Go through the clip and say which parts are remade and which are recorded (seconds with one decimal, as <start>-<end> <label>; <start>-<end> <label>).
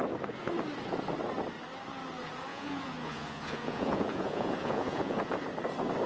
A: 0.0-2.5 recorded; 2.5-5.3 remade; 5.3-6.1 recorded